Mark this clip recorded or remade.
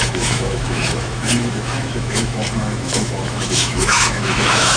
remade